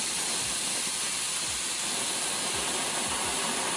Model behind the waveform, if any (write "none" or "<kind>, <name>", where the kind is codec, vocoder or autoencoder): none